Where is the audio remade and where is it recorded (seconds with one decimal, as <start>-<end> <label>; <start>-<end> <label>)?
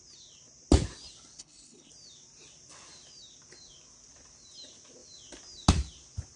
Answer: 0.0-1.4 recorded; 1.4-1.9 remade; 1.9-6.4 recorded